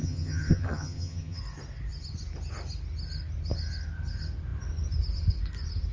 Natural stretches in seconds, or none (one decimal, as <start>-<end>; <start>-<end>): 1.4-5.9